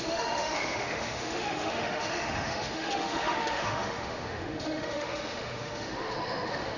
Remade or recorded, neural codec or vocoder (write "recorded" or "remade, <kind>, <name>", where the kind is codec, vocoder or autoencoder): remade, autoencoder, DAC-VAE